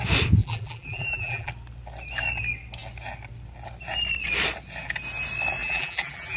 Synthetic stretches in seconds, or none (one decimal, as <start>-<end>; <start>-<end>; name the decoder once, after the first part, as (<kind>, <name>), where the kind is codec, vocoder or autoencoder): 0.4-1.5 (vocoder, BigVGAN v2); 5.6-6.4